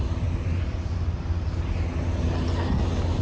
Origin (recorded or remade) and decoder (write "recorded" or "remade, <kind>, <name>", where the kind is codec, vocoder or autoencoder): recorded